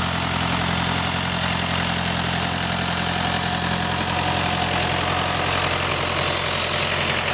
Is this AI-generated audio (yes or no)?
no